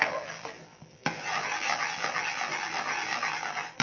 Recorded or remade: remade